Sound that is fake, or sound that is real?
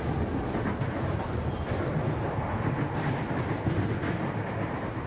real